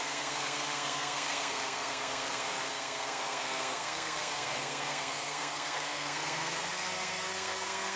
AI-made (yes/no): yes